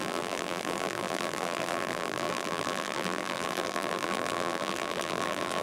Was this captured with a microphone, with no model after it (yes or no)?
no